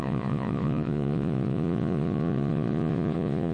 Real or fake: fake